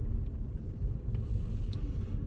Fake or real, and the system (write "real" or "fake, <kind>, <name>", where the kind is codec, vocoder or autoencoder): real